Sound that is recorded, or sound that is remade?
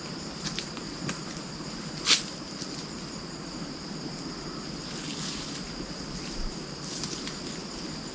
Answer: recorded